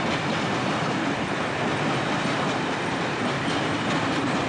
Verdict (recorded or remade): remade